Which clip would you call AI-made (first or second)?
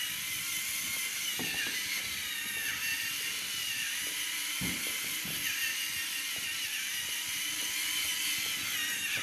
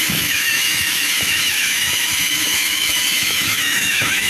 second